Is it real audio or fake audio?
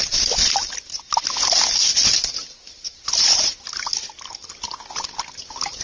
real